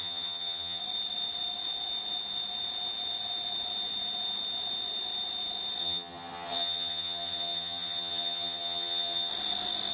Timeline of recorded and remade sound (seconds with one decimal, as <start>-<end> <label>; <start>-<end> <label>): 0.0-0.8 remade; 0.8-5.8 recorded; 5.8-9.3 remade; 9.3-9.9 recorded